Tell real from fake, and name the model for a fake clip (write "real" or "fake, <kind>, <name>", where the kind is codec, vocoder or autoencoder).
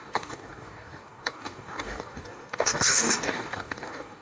fake, codec, DAC